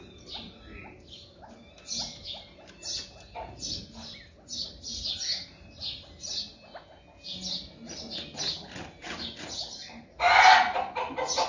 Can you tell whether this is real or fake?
real